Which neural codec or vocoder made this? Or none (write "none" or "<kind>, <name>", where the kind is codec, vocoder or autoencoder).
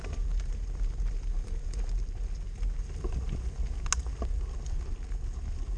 none